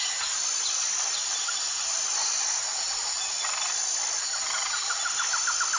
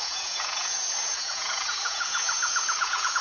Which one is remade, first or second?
second